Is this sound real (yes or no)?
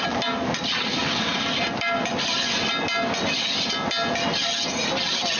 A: yes